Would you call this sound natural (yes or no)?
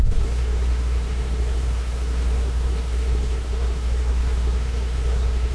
no